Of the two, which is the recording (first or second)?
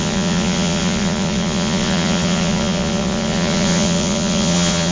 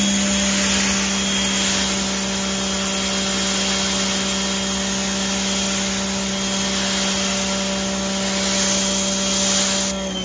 second